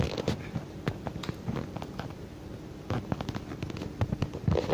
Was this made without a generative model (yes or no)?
yes